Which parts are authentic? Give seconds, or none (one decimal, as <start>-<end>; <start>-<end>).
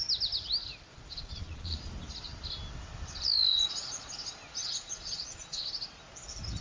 0.0-0.9; 1.9-3.5; 4.1-4.6; 5.6-6.6